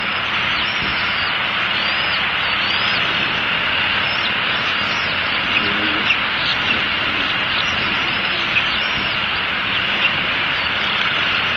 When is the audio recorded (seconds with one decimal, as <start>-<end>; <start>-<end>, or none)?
0.0-6.5; 11.2-11.6